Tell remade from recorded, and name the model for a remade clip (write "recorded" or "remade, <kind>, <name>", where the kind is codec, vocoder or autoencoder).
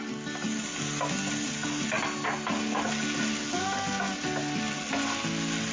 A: recorded